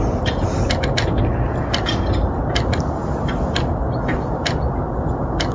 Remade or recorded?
recorded